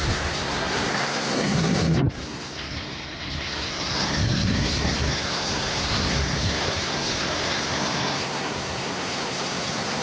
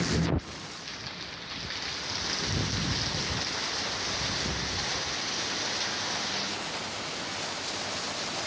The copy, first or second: first